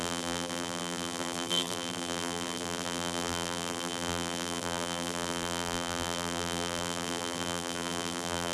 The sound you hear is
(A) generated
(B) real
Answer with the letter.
A